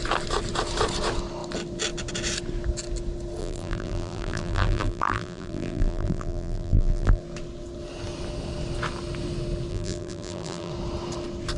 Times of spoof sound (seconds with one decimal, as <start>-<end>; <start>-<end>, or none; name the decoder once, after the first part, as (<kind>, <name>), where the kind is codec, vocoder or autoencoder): 3.4-7.2 (vocoder, BigVGAN v2); 9.7-10.7